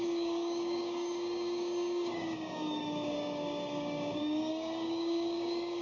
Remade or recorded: remade